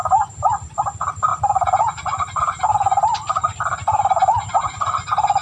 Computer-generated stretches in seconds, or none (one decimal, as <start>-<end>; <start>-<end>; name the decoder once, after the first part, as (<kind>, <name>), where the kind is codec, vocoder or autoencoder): none